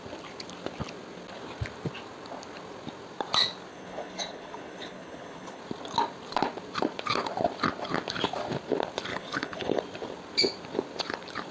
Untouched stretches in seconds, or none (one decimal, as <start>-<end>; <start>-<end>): 0.0-3.7; 5.6-9.1; 9.8-11.5